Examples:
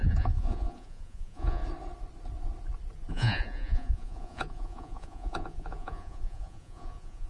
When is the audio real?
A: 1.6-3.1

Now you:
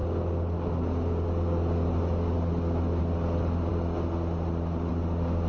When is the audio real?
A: 0.0-5.5

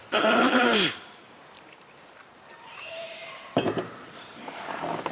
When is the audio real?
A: 0.0-0.7; 1.7-2.2; 4.6-5.1